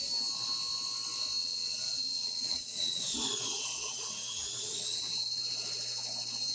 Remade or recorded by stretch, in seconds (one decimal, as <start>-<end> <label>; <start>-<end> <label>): 0.0-1.4 recorded; 1.4-5.0 remade; 5.0-6.5 recorded